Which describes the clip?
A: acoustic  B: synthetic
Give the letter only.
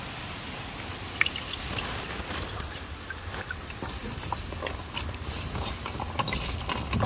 A